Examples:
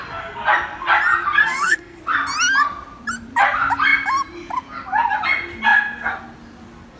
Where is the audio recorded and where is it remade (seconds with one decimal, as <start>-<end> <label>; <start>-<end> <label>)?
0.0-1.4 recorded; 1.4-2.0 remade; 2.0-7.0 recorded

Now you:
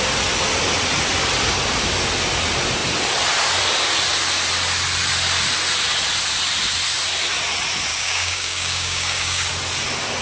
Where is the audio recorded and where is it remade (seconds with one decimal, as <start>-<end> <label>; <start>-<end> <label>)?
0.0-7.9 recorded; 7.9-9.5 remade; 9.5-10.2 recorded

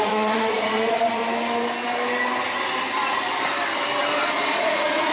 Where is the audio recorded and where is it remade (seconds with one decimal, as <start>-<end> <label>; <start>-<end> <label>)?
0.0-1.2 remade; 1.2-4.3 recorded; 4.3-5.1 remade

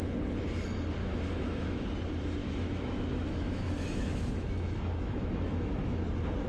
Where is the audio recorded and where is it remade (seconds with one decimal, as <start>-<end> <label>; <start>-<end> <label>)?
0.0-1.0 recorded; 1.0-1.8 remade; 1.8-2.4 recorded; 2.4-6.1 remade; 6.1-6.5 recorded

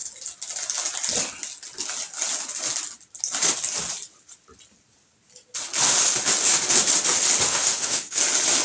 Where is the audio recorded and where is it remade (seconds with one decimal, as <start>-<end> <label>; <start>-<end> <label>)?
0.0-7.5 recorded; 7.5-8.2 remade; 8.2-8.6 recorded

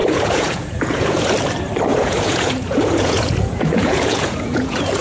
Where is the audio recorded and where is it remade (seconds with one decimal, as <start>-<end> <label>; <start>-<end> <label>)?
0.0-1.3 remade; 1.3-1.9 recorded; 1.9-5.0 remade